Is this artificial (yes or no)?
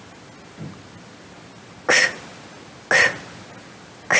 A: no